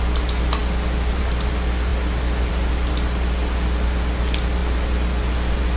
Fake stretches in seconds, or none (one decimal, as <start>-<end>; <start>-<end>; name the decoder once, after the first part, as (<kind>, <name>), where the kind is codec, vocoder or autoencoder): none